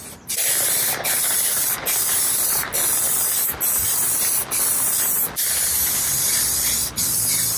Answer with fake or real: fake